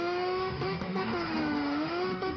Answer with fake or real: fake